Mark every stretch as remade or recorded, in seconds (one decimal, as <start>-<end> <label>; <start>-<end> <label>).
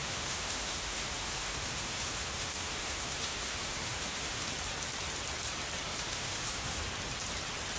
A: 0.0-4.5 remade; 4.5-5.9 recorded; 5.9-6.8 remade; 6.8-7.8 recorded